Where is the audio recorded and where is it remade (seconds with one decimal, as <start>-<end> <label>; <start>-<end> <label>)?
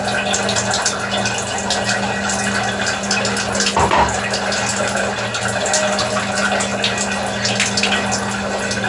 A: 0.0-8.9 recorded